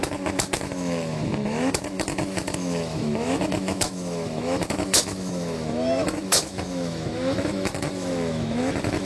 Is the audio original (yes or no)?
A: no